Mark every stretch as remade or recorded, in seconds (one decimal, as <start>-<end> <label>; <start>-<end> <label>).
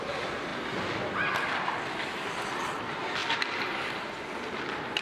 0.0-5.0 recorded